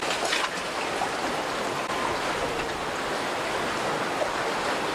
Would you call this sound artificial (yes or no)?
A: no